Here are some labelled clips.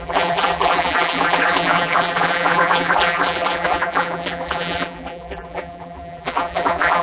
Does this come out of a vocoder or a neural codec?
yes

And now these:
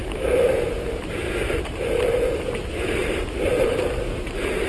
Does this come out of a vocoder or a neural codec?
yes